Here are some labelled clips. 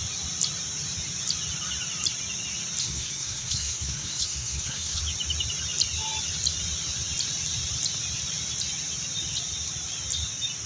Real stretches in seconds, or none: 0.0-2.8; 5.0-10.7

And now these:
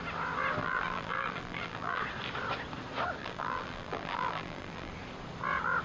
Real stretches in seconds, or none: 0.0-0.6; 2.0-3.2; 4.9-5.8

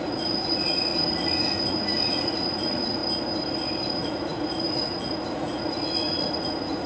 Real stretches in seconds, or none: 0.9-1.7; 3.0-3.9

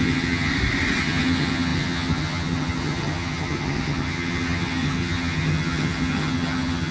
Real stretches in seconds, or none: 0.5-1.0

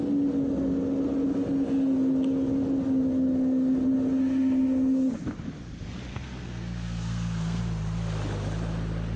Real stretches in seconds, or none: 0.0-6.1; 7.6-9.2

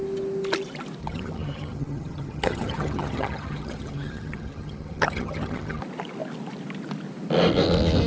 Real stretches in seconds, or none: 0.0-1.0; 5.8-8.1

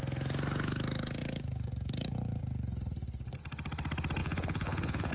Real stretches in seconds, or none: 0.0-4.2